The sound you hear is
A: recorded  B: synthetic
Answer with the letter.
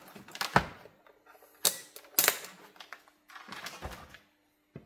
A